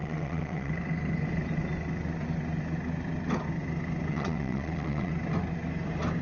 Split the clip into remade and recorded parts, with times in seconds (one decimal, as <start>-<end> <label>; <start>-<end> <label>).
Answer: 0.0-0.7 remade; 0.7-4.1 recorded; 4.1-5.1 remade; 5.1-6.2 recorded